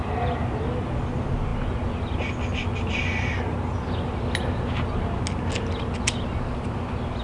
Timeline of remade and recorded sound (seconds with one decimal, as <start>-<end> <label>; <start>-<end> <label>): 0.0-7.2 recorded